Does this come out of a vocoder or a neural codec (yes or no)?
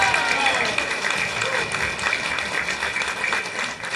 no